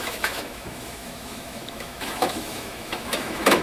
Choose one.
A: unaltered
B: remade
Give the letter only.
B